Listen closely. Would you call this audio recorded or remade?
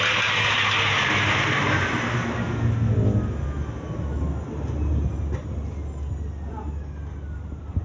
recorded